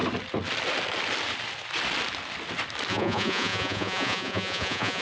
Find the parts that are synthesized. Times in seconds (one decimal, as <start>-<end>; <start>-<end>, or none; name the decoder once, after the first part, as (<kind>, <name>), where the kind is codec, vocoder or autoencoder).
2.9-5.0 (vocoder, Vocos)